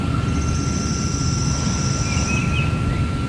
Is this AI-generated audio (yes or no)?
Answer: no